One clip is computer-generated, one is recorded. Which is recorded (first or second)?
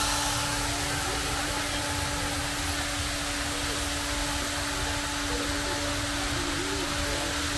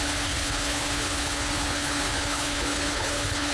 first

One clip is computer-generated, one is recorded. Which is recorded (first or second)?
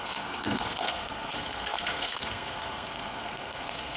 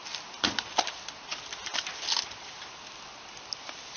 second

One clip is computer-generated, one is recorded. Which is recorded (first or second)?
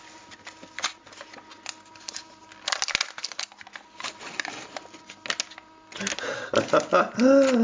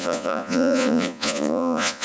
first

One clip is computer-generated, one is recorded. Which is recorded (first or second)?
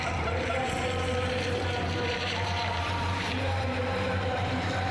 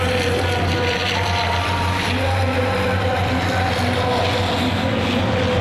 second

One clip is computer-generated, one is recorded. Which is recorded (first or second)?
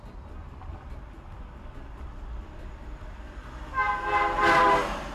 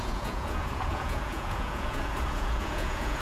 first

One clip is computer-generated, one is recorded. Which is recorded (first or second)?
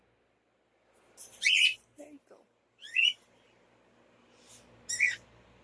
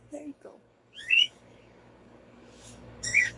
first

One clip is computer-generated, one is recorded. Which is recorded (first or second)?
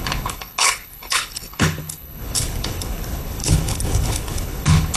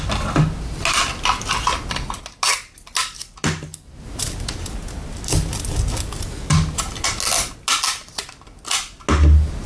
second